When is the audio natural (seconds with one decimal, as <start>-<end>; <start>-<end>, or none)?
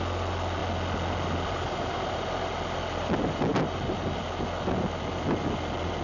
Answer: 0.0-6.0